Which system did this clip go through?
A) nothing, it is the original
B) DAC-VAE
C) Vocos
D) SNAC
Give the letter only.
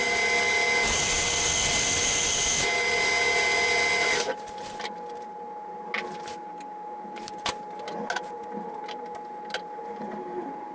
A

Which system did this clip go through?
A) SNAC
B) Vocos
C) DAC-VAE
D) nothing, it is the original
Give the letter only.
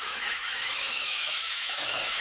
C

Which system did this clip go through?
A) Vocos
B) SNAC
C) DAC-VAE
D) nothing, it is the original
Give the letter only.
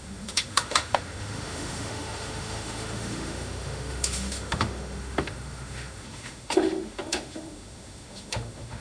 C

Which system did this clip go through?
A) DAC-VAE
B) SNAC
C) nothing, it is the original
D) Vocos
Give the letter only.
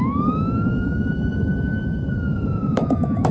A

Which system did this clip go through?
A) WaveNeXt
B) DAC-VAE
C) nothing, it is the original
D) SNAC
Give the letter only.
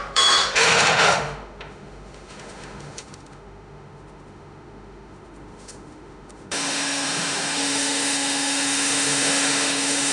B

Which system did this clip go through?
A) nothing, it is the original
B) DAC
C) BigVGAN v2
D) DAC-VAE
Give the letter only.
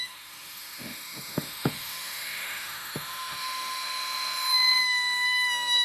D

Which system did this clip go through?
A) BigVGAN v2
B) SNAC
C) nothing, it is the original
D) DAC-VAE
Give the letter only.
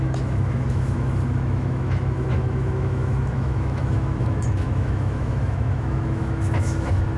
D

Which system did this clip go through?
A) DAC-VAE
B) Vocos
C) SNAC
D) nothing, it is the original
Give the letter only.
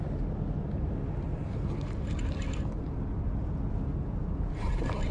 D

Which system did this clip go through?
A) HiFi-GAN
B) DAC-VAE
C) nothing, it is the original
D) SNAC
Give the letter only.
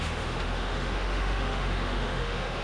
B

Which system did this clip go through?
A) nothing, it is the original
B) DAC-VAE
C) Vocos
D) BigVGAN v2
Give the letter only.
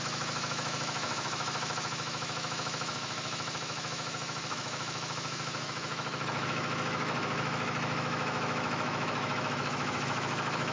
B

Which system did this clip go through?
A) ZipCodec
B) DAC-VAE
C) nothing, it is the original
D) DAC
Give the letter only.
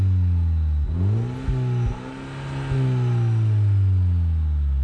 C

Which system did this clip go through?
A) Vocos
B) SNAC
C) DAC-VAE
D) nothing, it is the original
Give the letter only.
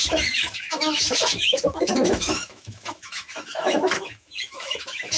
C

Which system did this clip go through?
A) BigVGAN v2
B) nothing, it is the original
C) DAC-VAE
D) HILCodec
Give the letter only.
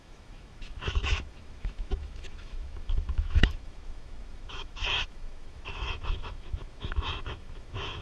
C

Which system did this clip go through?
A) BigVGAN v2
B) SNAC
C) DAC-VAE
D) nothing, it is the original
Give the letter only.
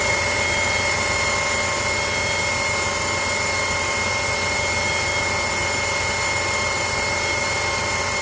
D